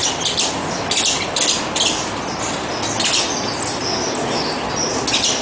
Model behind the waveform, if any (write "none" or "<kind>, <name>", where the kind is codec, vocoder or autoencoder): none